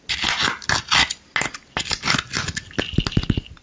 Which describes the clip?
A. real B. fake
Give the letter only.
A